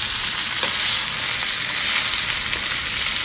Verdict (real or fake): real